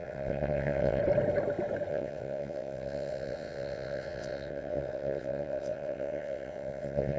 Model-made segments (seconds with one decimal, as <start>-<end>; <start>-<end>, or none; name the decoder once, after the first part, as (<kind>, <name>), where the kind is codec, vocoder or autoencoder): 0.0-1.0 (vocoder, WaveNeXt); 1.9-7.2